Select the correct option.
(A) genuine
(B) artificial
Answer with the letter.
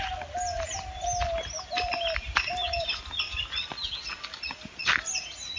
A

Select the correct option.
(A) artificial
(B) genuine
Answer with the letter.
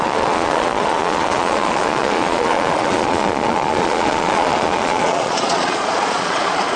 A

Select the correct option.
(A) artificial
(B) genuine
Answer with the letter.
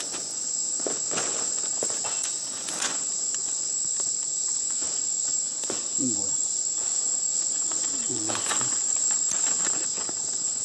A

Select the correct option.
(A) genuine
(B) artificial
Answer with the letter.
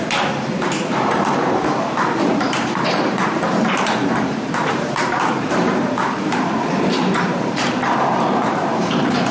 B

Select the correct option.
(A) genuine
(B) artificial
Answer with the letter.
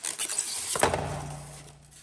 A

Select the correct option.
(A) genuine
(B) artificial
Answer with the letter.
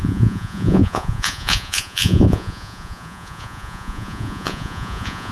B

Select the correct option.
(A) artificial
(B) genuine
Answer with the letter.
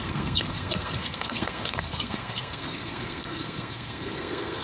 A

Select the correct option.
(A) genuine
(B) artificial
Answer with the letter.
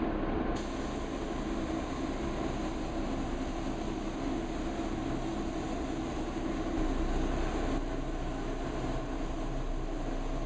A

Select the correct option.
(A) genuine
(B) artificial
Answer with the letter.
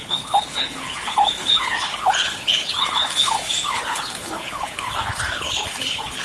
B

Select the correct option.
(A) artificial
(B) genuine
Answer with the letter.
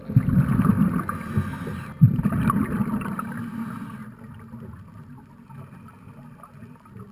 B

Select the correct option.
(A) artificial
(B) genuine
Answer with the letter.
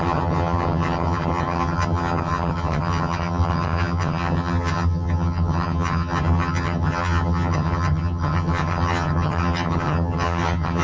A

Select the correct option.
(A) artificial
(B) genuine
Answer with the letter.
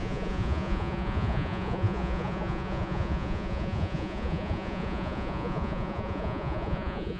A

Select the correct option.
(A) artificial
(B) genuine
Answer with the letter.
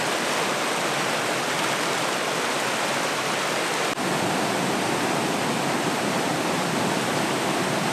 B